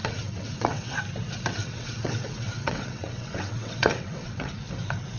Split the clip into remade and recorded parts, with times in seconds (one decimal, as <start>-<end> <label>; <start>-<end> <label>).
0.0-1.0 remade; 1.0-1.6 recorded; 1.6-4.5 remade; 4.5-5.2 recorded